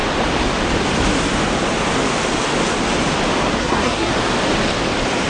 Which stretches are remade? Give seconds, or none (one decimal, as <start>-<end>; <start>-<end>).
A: 3.6-4.1